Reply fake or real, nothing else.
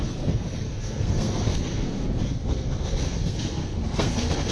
fake